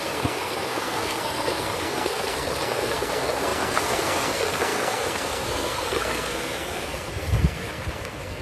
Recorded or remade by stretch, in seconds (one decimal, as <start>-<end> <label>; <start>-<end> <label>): 0.0-8.4 remade